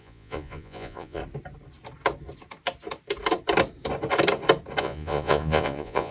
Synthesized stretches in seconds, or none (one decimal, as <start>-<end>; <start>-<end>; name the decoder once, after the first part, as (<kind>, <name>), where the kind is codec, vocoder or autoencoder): 0.0-1.2 (vocoder, Vocos); 4.8-6.1